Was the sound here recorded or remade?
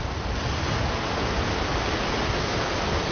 recorded